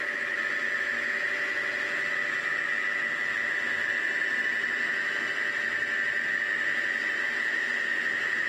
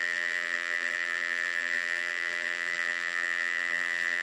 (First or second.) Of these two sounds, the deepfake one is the second